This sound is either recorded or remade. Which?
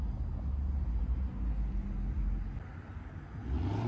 recorded